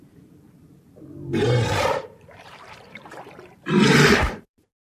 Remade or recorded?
remade